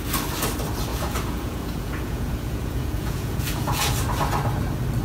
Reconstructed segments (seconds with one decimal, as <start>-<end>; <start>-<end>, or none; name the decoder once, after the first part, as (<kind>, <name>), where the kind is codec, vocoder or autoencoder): 0.9-3.9 (vocoder, Vocos)